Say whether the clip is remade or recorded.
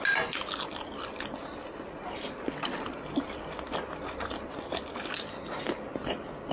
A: recorded